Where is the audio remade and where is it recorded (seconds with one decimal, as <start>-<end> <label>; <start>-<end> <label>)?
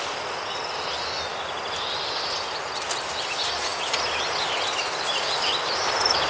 0.0-6.3 recorded